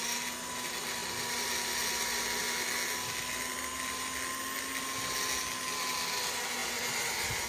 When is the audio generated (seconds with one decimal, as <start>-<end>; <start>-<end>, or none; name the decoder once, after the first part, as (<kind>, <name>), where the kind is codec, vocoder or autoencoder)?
6.6-7.1 (vocoder, BigVGAN v2)